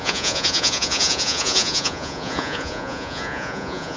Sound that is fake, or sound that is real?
fake